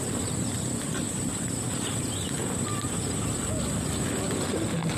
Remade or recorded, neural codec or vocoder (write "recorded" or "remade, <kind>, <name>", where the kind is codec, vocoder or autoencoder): recorded